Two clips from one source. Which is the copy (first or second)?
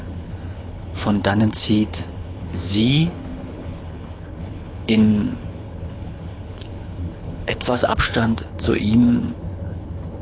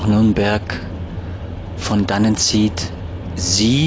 first